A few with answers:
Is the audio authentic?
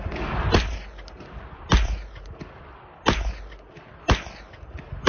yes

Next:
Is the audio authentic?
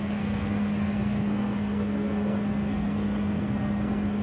no